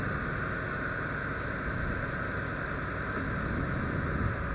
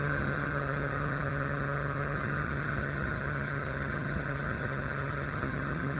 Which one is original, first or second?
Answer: first